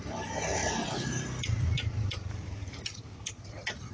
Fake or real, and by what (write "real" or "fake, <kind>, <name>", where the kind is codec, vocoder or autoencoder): fake, vocoder, BigVGAN v2